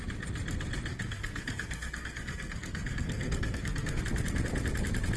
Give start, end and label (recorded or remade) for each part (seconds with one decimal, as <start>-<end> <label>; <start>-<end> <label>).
0.0-0.9 recorded; 0.9-4.0 remade; 4.0-5.2 recorded